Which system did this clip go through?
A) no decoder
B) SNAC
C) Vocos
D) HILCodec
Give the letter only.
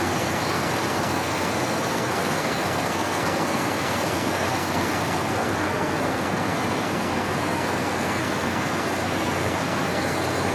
B